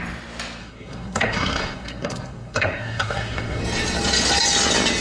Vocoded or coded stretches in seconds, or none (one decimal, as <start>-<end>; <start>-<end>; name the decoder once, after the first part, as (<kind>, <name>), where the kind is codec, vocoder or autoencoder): 0.6-3.6 (codec, SNAC)